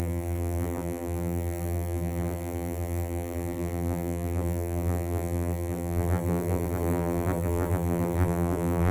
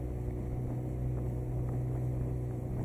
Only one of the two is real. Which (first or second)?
second